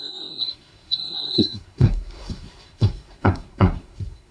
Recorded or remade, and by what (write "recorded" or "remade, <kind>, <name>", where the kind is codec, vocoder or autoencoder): remade, codec, SNAC